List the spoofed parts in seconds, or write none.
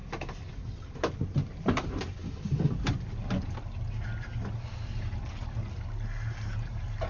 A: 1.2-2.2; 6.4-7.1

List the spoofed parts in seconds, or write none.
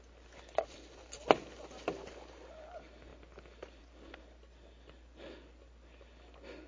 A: none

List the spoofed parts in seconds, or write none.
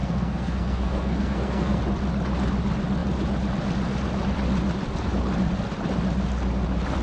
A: 0.0-1.8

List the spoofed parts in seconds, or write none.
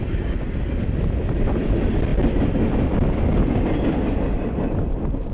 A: none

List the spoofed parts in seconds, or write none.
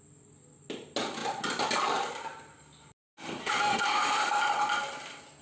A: 3.4-4.4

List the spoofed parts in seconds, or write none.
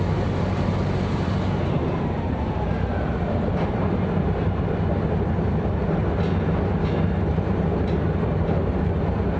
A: 0.0-5.8; 7.3-9.4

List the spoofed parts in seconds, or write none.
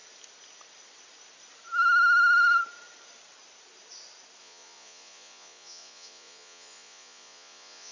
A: 4.4-7.9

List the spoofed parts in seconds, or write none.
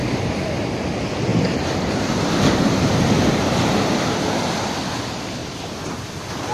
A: 0.0-0.5; 1.3-3.5; 5.4-6.1